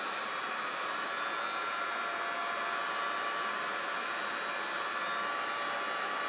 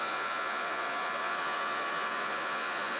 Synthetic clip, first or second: second